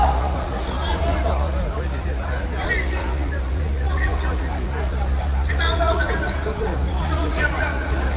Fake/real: fake